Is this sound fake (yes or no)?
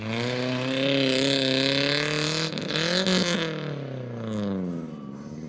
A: no